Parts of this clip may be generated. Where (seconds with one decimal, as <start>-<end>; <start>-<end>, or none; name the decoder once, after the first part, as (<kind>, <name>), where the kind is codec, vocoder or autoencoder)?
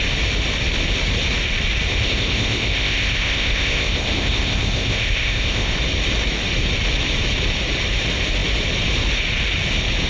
1.9-5.7 (codec, ZipCodec)